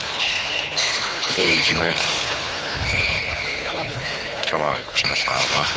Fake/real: fake